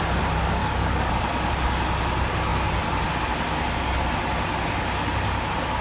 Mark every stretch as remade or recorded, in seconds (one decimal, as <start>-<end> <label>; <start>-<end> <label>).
0.0-0.6 recorded; 0.6-1.1 remade; 1.1-5.8 recorded